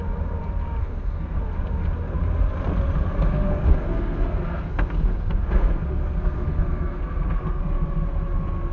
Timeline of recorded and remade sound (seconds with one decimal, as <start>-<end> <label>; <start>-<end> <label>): 0.0-0.8 recorded; 0.8-1.4 remade; 1.4-3.3 recorded; 3.3-7.6 remade; 7.6-8.7 recorded